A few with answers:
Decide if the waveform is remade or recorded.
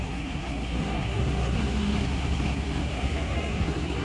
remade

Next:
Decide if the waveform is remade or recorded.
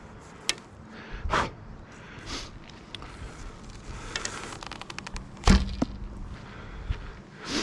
recorded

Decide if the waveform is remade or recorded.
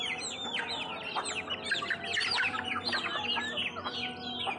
recorded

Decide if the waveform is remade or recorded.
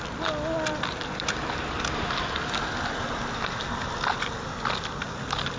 recorded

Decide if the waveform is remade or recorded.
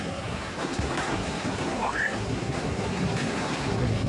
remade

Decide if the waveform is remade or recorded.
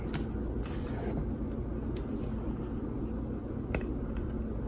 recorded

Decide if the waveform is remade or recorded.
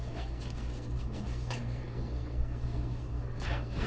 remade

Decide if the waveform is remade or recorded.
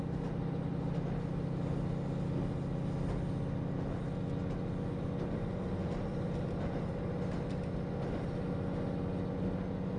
recorded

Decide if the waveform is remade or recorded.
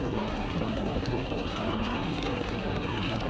remade